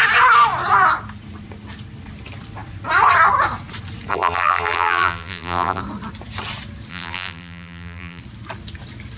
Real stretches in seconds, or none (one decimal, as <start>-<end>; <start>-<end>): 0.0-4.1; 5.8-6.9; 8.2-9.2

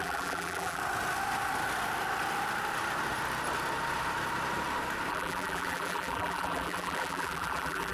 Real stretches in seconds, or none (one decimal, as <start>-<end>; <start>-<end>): 0.8-5.1

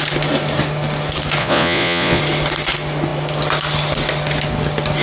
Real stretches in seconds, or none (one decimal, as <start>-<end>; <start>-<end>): 0.0-1.4; 2.2-5.0